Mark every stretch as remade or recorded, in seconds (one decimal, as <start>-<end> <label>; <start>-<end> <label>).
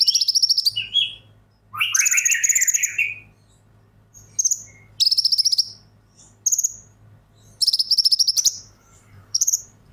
0.0-7.6 recorded; 7.6-9.9 remade